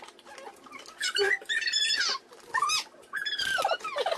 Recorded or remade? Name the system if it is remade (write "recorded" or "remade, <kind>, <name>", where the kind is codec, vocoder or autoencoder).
recorded